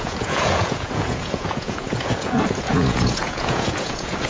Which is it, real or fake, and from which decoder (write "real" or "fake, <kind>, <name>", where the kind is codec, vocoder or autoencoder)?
fake, vocoder, Vocos